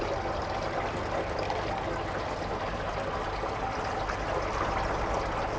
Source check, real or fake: real